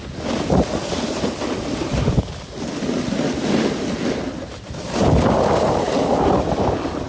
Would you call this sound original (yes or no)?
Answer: yes